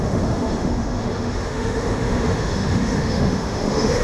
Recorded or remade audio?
remade